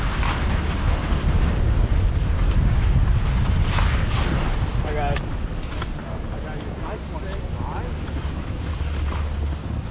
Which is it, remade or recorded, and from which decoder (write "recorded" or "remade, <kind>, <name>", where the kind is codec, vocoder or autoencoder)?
recorded